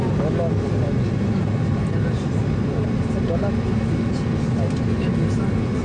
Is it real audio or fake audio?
real